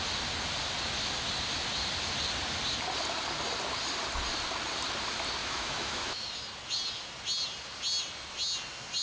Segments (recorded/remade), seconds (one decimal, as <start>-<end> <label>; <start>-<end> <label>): 0.0-5.4 recorded; 5.4-6.3 remade; 6.3-9.0 recorded

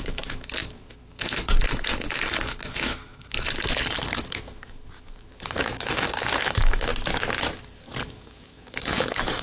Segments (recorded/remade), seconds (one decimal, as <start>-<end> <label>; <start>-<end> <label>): 0.0-6.9 remade; 6.9-8.0 recorded; 8.0-9.4 remade